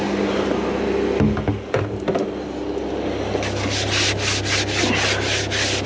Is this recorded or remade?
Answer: recorded